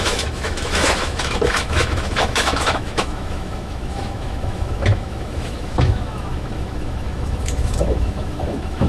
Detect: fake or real fake